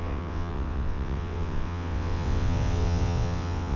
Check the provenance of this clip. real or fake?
fake